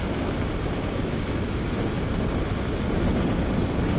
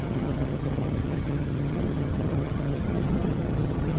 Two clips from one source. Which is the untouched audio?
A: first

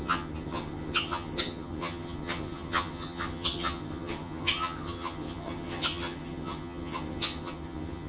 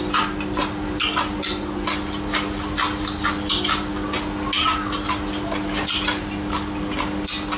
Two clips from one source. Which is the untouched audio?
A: second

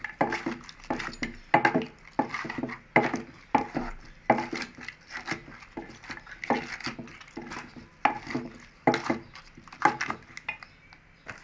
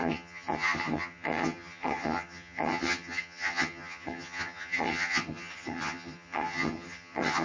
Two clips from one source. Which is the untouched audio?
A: first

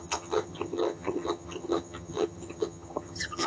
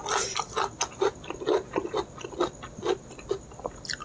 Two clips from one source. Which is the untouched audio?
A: second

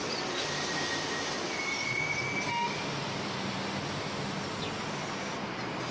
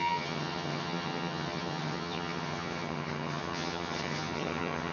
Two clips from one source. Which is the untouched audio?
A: first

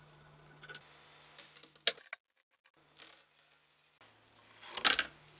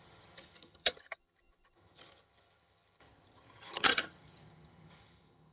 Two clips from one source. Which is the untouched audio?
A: first